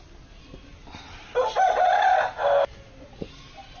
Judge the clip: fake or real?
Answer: real